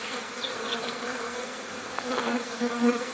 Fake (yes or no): yes